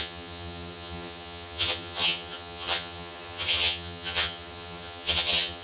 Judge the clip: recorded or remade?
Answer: remade